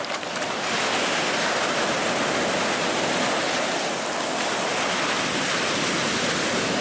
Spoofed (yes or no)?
no